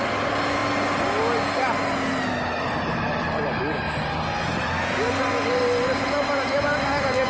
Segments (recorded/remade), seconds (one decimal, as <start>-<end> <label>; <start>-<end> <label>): 0.0-7.3 recorded